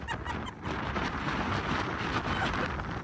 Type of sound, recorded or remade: recorded